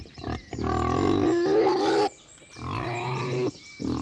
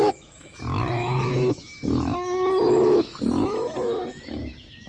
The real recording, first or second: first